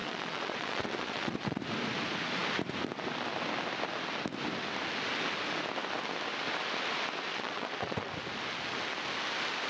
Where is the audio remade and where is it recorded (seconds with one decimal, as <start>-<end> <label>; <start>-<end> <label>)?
0.0-1.6 remade; 1.6-7.3 recorded; 7.3-8.1 remade; 8.1-9.7 recorded